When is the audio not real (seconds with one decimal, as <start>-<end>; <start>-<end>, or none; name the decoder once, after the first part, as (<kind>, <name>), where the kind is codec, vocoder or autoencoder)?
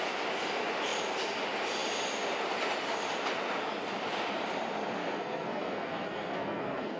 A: 5.0-7.0 (codec, SNAC)